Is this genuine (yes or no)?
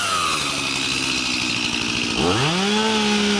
yes